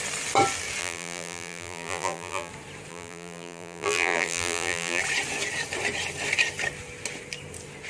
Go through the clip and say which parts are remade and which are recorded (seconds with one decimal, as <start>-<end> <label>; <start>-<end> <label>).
0.0-0.8 recorded; 0.8-2.5 remade; 2.5-2.9 recorded; 2.9-5.0 remade; 5.0-7.9 recorded